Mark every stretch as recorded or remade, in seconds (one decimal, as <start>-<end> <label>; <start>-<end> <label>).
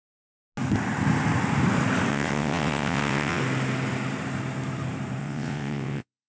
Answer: 0.0-2.1 recorded; 2.1-3.4 remade; 3.4-5.2 recorded; 5.2-6.3 remade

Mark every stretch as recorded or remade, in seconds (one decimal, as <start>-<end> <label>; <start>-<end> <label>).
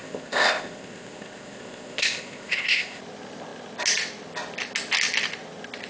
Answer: 0.0-3.0 remade; 3.0-5.9 recorded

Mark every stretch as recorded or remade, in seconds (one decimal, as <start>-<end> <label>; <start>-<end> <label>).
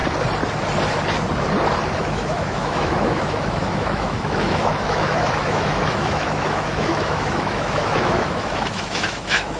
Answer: 0.0-2.0 recorded; 2.0-9.6 remade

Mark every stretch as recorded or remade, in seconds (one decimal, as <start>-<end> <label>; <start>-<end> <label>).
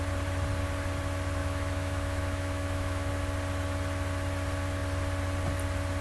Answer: 0.0-1.4 recorded; 1.4-3.1 remade; 3.1-6.0 recorded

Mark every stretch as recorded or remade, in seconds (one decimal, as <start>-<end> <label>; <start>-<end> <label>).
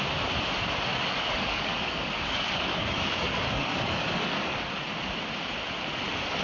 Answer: 0.0-0.9 recorded; 0.9-4.7 remade; 4.7-6.4 recorded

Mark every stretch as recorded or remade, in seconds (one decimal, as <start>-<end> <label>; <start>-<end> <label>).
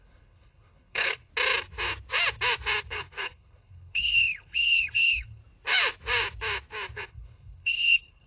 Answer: 0.0-1.3 remade; 1.3-2.8 recorded; 2.8-5.4 remade; 5.4-6.9 recorded; 6.9-8.3 remade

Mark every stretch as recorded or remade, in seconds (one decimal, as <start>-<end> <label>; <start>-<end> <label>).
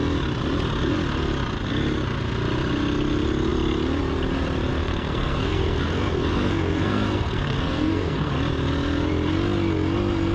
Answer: 0.0-4.7 recorded; 4.7-8.3 remade; 8.3-10.3 recorded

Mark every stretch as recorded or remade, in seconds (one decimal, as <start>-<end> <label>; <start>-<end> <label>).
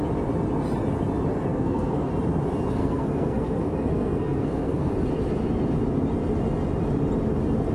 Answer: 0.0-1.5 recorded; 1.5-2.1 remade; 2.1-2.8 recorded; 2.8-4.9 remade; 4.9-7.7 recorded